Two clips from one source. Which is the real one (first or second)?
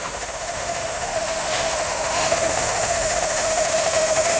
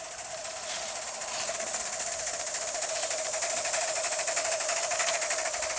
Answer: second